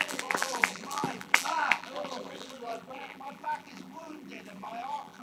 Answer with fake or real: fake